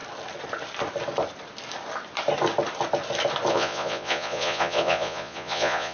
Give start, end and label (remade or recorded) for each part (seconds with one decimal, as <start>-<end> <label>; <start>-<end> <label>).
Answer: 0.0-3.5 recorded; 3.5-5.9 remade